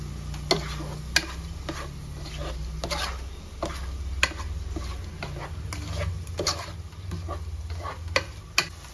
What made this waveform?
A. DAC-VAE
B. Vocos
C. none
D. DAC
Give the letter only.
C